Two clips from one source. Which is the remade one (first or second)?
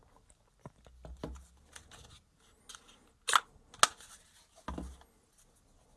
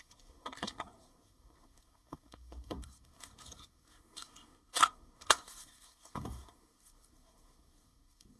second